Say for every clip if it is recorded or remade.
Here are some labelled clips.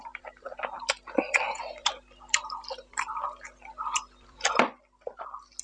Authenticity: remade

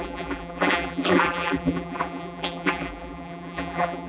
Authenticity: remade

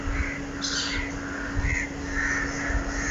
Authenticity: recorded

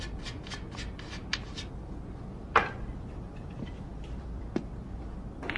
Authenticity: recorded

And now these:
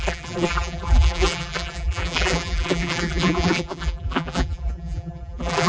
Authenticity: remade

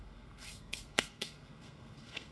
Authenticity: remade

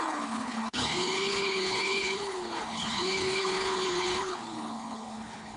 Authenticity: remade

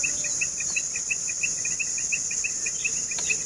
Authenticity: recorded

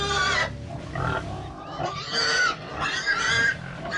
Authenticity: recorded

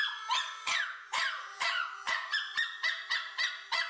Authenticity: remade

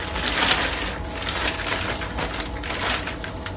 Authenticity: recorded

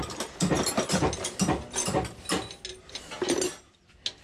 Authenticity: recorded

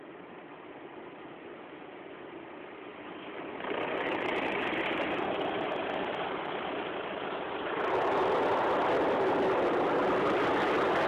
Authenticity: recorded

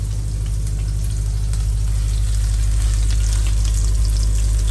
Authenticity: recorded